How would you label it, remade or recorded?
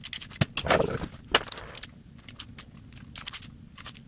recorded